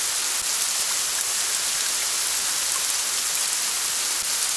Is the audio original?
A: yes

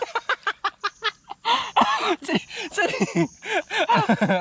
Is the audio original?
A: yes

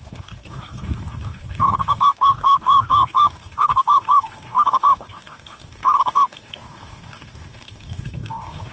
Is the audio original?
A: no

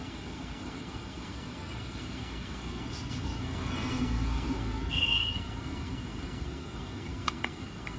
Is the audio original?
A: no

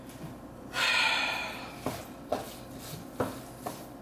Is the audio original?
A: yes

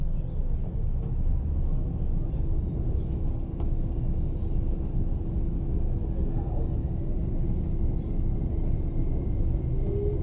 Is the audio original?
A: yes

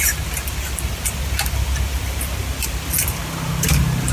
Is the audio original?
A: yes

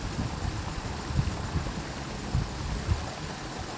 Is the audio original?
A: yes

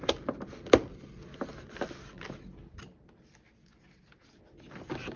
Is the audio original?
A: yes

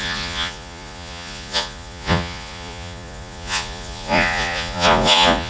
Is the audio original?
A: no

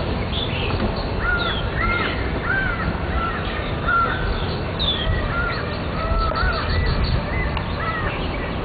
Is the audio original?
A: yes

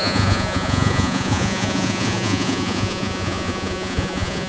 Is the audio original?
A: no